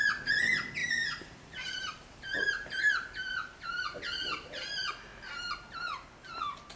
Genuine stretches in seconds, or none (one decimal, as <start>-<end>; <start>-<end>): 0.0-0.8; 2.8-3.3; 4.6-6.8

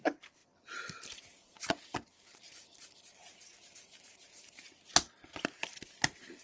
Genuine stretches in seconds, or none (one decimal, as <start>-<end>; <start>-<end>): 0.0-3.2; 4.7-6.4